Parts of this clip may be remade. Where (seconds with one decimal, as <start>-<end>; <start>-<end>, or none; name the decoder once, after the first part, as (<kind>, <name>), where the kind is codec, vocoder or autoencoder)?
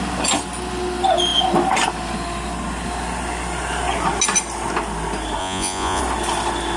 5.4-6.0 (vocoder, Vocos)